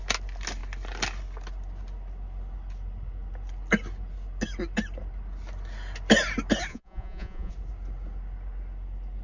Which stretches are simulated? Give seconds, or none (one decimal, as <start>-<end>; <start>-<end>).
6.7-7.5